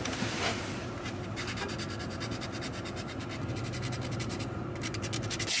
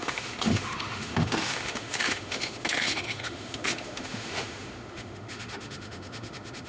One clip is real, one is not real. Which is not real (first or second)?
second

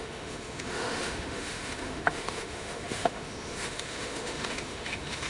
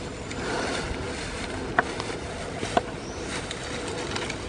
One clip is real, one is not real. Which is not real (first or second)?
first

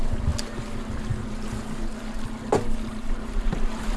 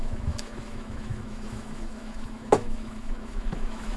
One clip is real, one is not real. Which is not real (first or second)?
second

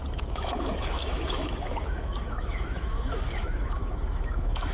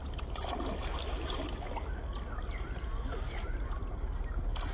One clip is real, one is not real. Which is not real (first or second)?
first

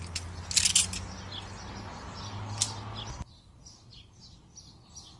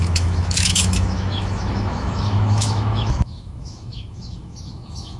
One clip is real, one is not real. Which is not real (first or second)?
second